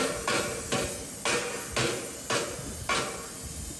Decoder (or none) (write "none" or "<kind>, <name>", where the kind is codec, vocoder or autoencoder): none